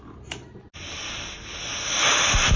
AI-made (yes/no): no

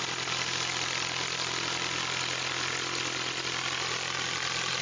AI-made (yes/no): no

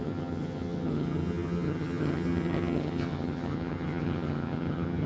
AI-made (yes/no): yes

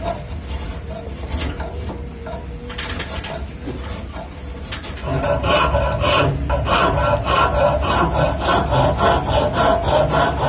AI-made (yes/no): no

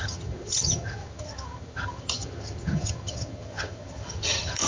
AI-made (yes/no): yes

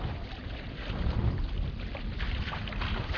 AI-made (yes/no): no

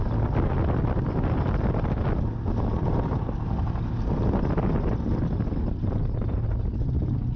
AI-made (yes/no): no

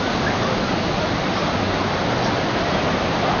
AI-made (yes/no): no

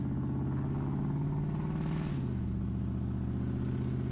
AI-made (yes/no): no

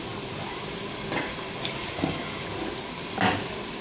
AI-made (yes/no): no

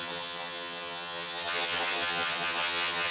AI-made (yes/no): yes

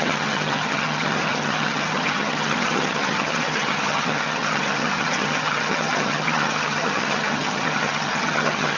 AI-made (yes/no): yes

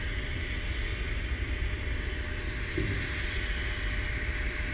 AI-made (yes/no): no